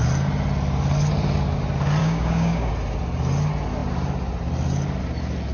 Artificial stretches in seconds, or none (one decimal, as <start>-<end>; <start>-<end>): 2.0-2.7